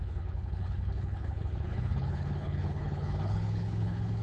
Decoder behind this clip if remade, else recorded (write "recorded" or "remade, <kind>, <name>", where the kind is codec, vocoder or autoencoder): remade, codec, HILCodec